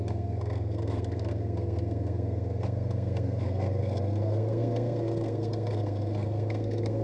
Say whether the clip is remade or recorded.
remade